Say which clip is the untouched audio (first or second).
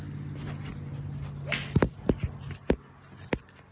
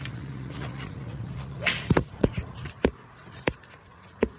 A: first